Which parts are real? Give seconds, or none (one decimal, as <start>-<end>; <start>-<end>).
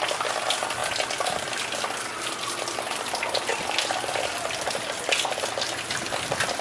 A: 0.0-6.6